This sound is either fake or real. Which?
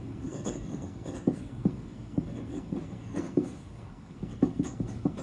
fake